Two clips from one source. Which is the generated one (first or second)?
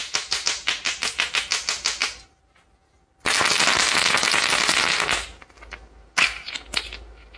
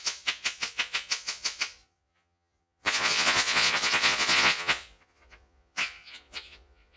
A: second